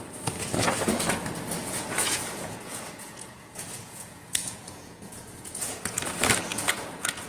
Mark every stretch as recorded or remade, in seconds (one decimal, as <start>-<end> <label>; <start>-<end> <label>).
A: 0.0-1.6 recorded; 1.6-6.0 remade; 6.0-6.5 recorded; 6.5-7.3 remade